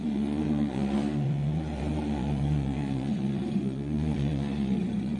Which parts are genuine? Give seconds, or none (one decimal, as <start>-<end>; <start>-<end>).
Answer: none